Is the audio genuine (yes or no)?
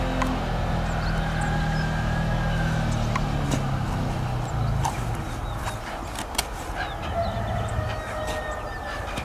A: yes